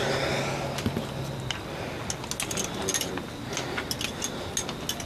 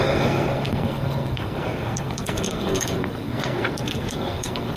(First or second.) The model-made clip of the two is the second